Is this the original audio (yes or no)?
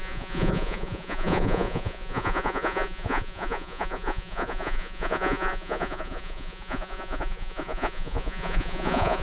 no